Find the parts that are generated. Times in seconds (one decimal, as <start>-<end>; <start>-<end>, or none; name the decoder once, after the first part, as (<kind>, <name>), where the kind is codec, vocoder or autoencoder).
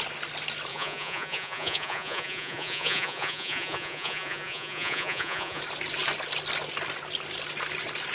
0.7-5.6 (vocoder, Vocos)